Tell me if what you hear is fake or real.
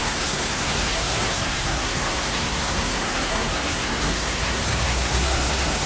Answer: fake